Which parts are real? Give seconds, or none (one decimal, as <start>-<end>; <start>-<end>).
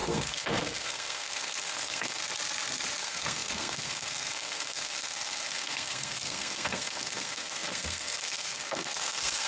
2.2-3.0